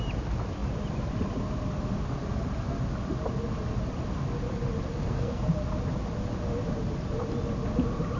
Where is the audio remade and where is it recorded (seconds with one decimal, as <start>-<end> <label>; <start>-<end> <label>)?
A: 0.0-4.9 recorded; 4.9-5.5 remade; 5.5-8.2 recorded